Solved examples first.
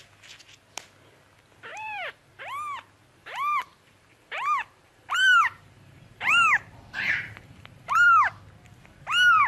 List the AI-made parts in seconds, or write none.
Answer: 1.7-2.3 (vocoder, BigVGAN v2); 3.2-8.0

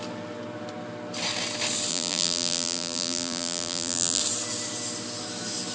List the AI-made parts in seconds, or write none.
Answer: 1.9-4.2 (vocoder, BigVGAN v2)

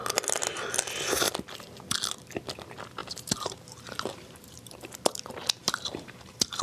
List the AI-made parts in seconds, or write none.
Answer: 3.0-5.0 (vocoder, BigVGAN v2); 5.6-6.6

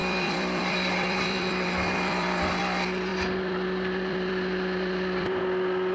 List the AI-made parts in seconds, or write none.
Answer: 0.0-2.5 (vocoder, BigVGAN v2); 3.1-5.4

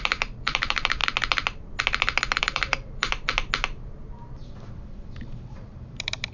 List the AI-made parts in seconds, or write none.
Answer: 0.0-1.0 (vocoder, BigVGAN v2); 2.4-3.3; 5.2-6.3